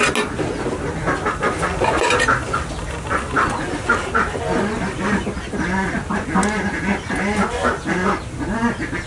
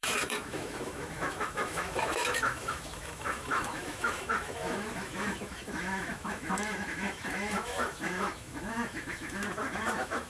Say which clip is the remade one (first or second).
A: second